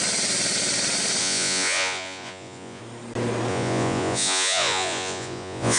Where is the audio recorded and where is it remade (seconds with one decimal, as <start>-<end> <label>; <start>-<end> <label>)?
0.0-1.2 recorded; 1.2-2.8 remade; 2.8-3.5 recorded; 3.5-5.8 remade